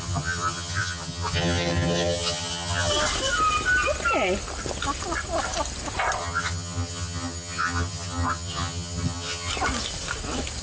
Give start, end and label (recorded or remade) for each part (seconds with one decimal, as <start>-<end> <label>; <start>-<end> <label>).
0.0-2.9 remade; 2.9-6.2 recorded; 6.2-9.5 remade; 9.5-10.6 recorded